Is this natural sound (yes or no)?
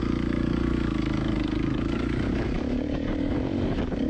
no